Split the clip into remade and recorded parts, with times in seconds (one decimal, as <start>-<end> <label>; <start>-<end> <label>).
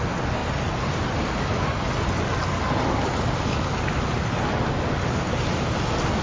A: 0.0-6.2 recorded